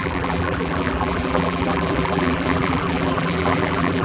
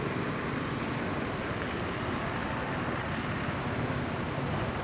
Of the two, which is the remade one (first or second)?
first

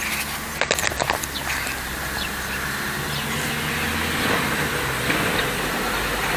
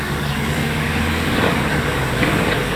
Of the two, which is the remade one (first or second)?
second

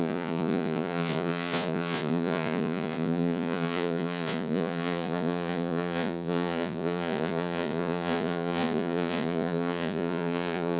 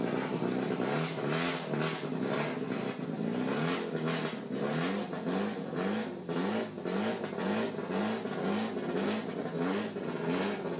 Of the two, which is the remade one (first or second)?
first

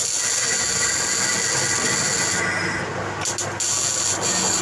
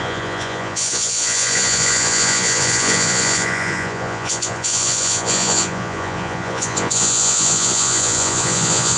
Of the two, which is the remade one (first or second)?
second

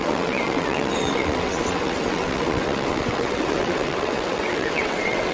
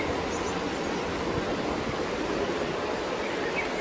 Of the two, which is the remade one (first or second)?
first